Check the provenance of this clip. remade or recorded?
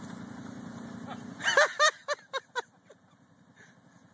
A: recorded